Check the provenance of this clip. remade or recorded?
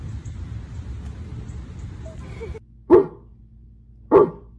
recorded